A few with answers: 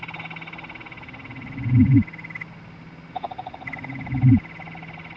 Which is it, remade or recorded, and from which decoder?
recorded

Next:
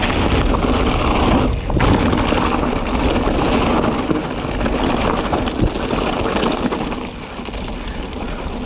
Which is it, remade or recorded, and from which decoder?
recorded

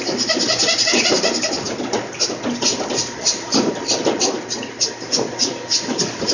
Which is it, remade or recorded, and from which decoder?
recorded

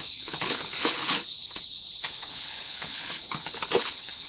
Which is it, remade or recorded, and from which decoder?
remade, codec, HILCodec